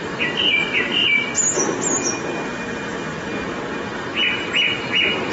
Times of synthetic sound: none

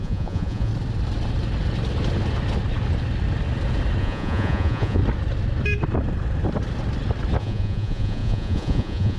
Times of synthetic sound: 0.0-0.7 (vocoder, Vocos); 4.0-5.0; 7.4-9.2

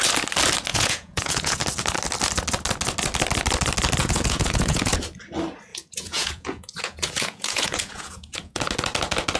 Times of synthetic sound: 0.7-1.6 (vocoder, Vocos); 4.0-4.9; 5.7-8.6

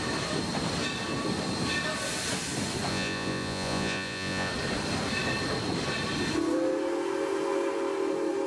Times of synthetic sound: 2.9-4.5 (vocoder, Vocos)

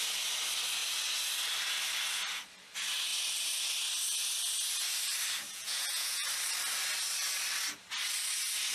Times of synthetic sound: 5.5-6.3 (vocoder, Vocos)

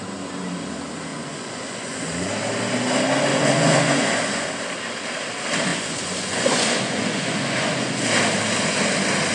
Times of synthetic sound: 1.1-2.3 (vocoder, Vocos); 3.3-4.5; 5.7-8.1